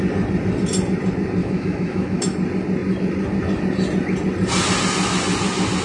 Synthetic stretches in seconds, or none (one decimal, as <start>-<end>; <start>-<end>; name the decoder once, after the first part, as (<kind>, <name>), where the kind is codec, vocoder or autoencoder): 1.4-2.2 (autoencoder, DAC-VAE)